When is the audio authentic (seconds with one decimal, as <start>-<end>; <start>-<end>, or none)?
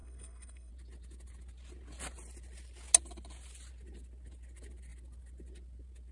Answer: 0.7-6.1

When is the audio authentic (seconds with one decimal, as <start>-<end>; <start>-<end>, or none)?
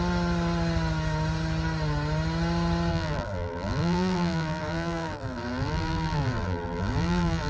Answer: 0.0-2.9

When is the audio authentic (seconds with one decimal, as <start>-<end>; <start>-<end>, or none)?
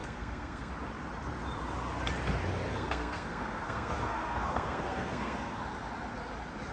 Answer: 0.7-2.7; 5.6-6.7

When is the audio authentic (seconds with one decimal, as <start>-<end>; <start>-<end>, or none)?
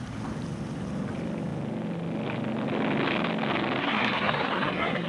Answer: 0.0-3.8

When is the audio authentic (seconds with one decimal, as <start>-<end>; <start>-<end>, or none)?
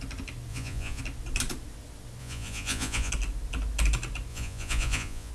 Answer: 0.0-0.5; 1.0-2.2; 3.1-4.3